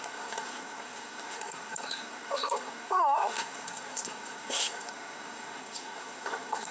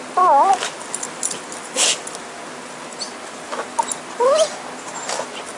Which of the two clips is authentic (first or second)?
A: second